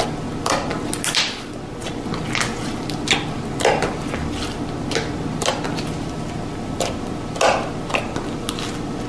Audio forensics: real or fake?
real